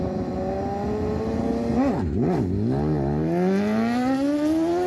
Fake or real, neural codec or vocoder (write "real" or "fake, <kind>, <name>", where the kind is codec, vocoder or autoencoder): real